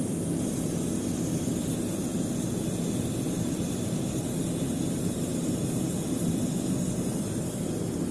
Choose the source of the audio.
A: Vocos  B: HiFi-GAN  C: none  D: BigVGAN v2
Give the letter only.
C